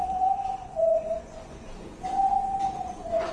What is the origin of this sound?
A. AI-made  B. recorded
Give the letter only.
A